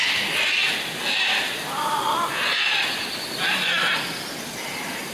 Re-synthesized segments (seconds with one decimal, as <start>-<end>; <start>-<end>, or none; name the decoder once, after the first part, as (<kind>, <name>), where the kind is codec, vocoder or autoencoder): none